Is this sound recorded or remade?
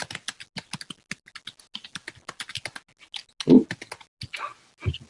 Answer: recorded